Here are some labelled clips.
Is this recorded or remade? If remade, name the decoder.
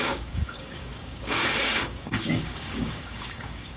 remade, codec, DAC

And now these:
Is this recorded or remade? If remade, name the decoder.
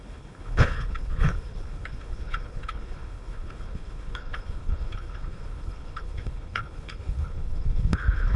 remade, codec, HILCodec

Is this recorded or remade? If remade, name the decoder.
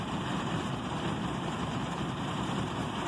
remade, vocoder, BigVGAN v2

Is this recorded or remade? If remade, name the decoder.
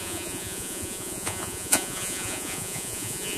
remade, vocoder, Vocos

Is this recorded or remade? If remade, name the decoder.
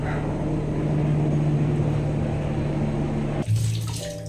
recorded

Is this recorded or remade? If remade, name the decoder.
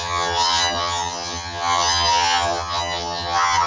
remade, vocoder, HiFi-GAN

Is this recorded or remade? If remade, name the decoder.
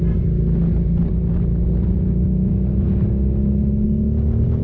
recorded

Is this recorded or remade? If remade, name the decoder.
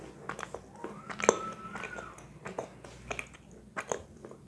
recorded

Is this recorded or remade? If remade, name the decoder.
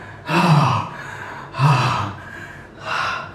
remade, vocoder, BigVGAN v2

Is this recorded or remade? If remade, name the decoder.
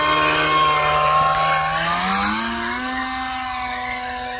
recorded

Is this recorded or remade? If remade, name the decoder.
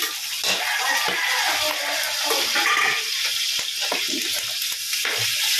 recorded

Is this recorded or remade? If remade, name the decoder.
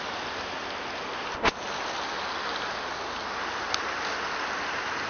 recorded